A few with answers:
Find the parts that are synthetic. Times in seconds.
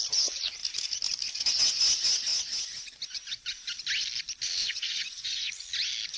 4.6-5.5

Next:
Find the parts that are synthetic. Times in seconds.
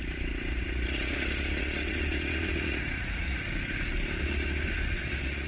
0.5-3.5; 4.2-5.5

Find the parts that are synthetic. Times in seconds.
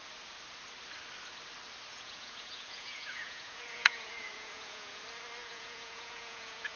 1.9-5.0; 5.4-6.8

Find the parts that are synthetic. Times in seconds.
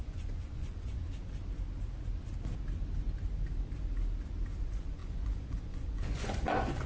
0.0-1.0; 4.6-6.9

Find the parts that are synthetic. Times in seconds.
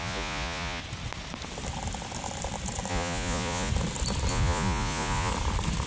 0.0-0.8; 2.9-3.7; 4.3-5.3